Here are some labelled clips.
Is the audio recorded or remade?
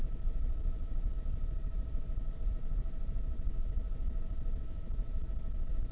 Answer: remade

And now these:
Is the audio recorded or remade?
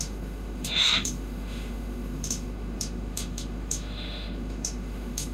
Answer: remade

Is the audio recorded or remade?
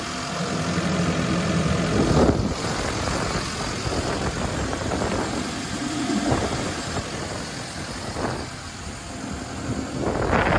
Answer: recorded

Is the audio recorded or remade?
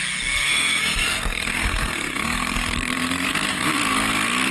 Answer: remade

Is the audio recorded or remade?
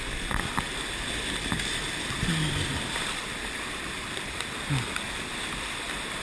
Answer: recorded